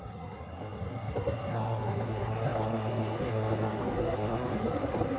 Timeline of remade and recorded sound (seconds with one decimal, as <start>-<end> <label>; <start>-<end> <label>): 0.0-5.2 remade